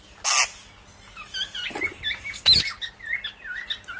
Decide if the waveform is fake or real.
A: real